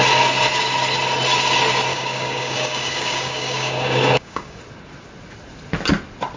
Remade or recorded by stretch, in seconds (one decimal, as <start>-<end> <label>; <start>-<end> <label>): 0.0-1.9 recorded; 1.9-4.6 remade; 4.6-6.4 recorded